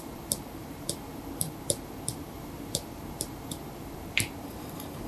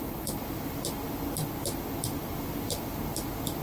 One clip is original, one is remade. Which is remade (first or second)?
first